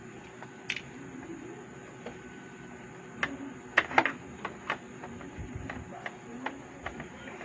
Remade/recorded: recorded